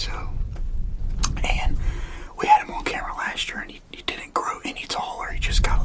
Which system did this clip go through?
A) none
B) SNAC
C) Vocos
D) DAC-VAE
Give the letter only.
A